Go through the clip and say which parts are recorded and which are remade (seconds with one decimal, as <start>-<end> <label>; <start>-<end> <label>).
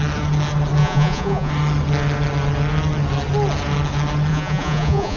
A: 0.0-0.8 recorded; 0.8-1.5 remade; 1.5-4.3 recorded; 4.3-5.2 remade